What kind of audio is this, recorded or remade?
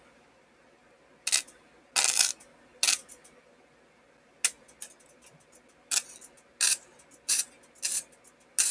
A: recorded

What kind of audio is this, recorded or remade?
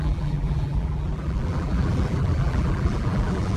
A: remade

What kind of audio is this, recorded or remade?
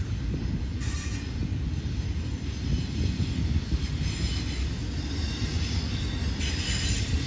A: recorded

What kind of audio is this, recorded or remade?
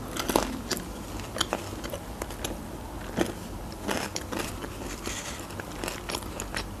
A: recorded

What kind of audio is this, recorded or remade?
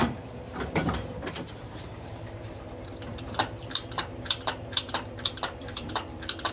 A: remade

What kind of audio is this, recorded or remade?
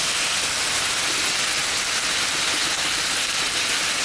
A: recorded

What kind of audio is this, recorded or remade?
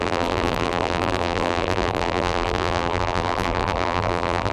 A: remade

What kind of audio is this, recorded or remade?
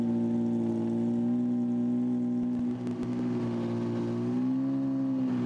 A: recorded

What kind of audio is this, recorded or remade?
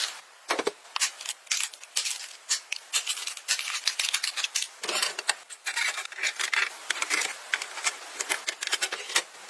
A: recorded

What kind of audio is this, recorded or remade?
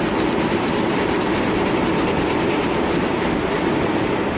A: remade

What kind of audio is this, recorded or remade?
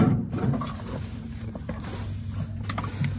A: remade